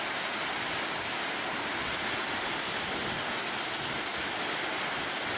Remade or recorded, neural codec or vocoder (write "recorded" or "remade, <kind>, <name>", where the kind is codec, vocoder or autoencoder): recorded